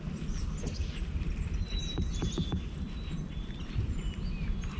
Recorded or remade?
recorded